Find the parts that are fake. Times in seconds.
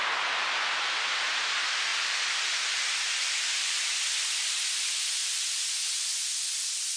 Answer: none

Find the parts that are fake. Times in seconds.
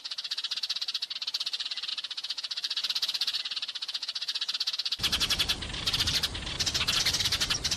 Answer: 0.0-7.8 (vocoder, BigVGAN v2)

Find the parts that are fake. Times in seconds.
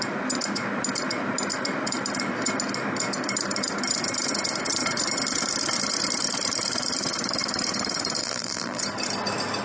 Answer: 8.2-8.8 (vocoder, BigVGAN v2)